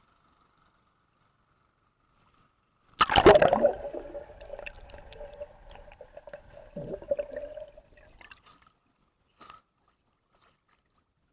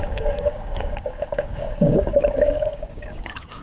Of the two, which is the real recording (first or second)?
first